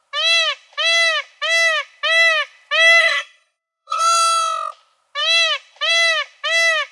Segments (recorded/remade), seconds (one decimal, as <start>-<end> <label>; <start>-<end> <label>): 0.0-3.0 recorded; 3.0-4.0 remade; 4.0-6.9 recorded